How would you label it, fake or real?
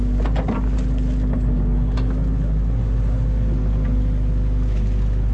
real